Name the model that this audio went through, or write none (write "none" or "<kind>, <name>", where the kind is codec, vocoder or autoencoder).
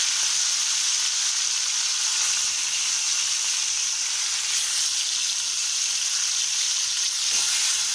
none